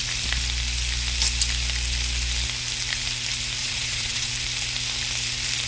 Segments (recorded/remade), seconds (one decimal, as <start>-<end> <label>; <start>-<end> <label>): 0.0-3.6 recorded; 3.6-4.3 remade; 4.3-5.7 recorded